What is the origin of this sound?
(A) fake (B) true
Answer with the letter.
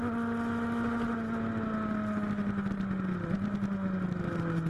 B